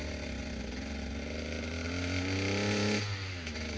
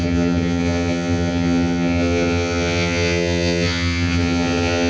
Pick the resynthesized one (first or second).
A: second